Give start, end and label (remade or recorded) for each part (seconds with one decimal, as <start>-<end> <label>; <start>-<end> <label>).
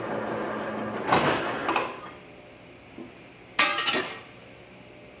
0.0-5.2 recorded